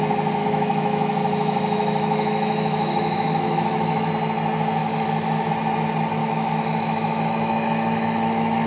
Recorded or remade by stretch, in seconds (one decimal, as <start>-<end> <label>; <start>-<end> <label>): 0.0-0.4 recorded; 0.4-4.1 remade; 4.1-4.8 recorded; 4.8-5.5 remade; 5.5-6.2 recorded; 6.2-8.7 remade